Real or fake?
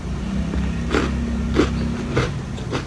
real